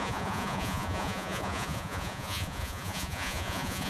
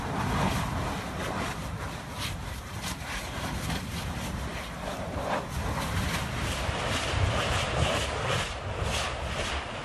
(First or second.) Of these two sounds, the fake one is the first